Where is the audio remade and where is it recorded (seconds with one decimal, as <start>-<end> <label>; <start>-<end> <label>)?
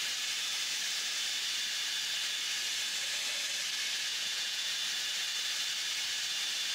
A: 0.0-4.1 recorded; 4.1-4.7 remade; 4.7-6.7 recorded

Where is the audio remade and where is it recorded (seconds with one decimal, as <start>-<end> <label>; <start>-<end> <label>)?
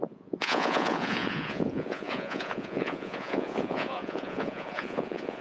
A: 0.0-5.4 remade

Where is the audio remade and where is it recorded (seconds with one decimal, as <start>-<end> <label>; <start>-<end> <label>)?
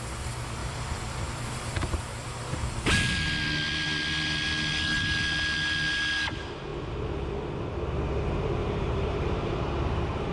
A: 0.0-0.6 recorded; 0.6-2.9 remade; 2.9-8.6 recorded; 8.6-9.6 remade; 9.6-10.3 recorded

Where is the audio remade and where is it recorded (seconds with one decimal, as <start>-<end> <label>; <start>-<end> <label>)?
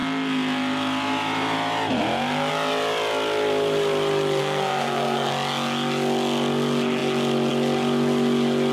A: 0.0-4.4 recorded; 4.4-5.3 remade; 5.3-8.7 recorded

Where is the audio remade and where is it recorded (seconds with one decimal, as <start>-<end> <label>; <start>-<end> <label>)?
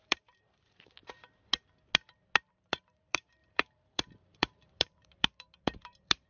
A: 0.0-1.0 remade; 1.0-2.5 recorded; 2.5-6.3 remade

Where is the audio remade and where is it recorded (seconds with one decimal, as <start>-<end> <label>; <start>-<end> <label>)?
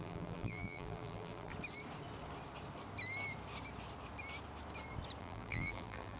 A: 0.0-1.5 remade; 1.5-5.2 recorded; 5.2-6.2 remade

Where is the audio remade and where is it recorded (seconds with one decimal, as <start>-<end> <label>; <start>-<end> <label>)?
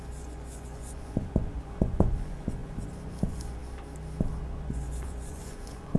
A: 0.0-3.6 remade; 3.6-4.4 recorded; 4.4-6.0 remade